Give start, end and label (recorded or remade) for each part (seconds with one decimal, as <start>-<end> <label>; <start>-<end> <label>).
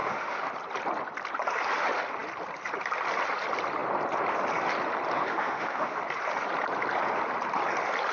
0.0-0.5 remade; 0.5-5.2 recorded; 5.2-6.0 remade; 6.0-8.1 recorded